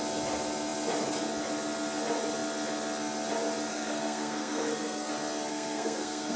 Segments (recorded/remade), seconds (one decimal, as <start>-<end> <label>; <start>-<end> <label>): 0.0-3.7 recorded; 3.7-5.1 remade; 5.1-5.5 recorded; 5.5-6.4 remade